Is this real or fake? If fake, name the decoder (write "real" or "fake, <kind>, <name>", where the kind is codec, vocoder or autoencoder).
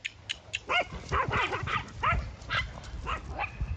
real